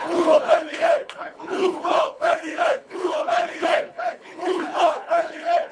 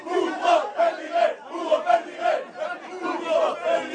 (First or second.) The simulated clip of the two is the first